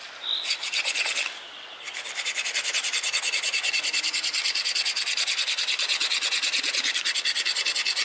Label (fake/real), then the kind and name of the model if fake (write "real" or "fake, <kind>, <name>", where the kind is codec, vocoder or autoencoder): real